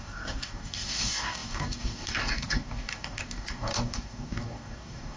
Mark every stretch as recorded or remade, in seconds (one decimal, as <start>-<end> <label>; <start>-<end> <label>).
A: 0.0-5.2 remade